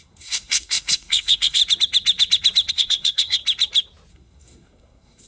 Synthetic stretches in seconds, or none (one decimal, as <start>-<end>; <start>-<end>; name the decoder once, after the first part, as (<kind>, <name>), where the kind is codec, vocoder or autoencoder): 0.0-1.6 (codec, SNAC); 2.7-3.4; 4.1-5.3